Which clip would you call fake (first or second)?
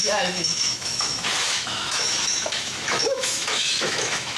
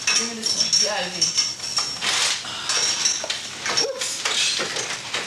first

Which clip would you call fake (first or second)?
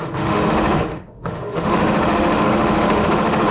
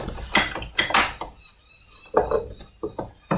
first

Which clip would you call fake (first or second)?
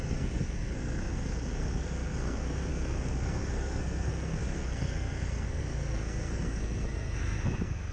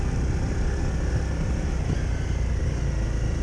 first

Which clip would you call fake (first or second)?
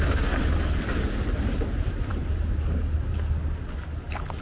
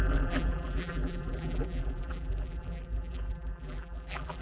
second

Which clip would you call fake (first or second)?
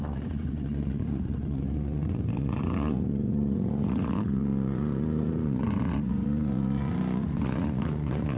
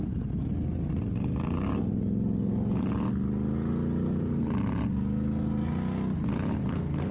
first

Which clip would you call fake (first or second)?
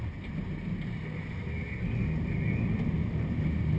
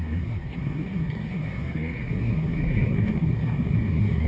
second